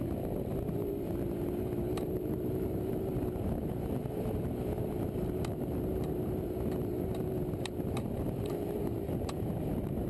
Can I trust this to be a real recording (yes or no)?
no